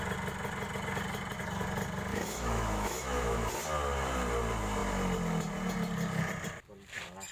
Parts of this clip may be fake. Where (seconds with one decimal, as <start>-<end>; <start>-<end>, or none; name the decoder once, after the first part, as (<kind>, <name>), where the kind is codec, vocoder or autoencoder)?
2.1-3.5 (autoencoder, DAC-VAE)